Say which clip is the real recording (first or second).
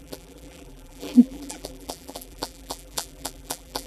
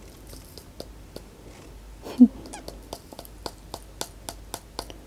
second